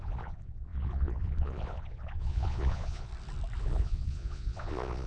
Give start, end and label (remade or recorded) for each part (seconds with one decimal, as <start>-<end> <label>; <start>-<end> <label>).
0.0-3.1 remade; 3.1-3.6 recorded; 3.6-5.1 remade